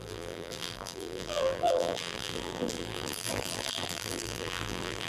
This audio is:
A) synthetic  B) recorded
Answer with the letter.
A